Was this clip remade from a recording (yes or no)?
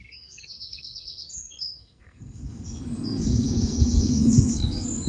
yes